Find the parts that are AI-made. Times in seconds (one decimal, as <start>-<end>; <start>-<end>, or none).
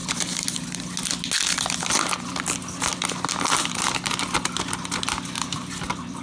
none